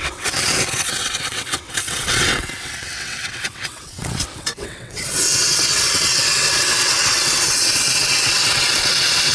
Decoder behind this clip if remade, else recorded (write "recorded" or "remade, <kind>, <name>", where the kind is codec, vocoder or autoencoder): remade, vocoder, WaveNeXt